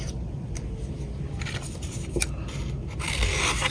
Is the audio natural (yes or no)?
yes